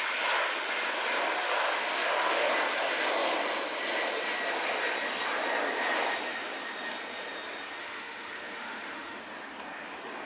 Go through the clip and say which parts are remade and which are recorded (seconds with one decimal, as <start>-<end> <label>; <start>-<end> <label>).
0.0-1.9 recorded; 1.9-2.5 remade; 2.5-7.8 recorded; 7.8-9.2 remade; 9.2-10.3 recorded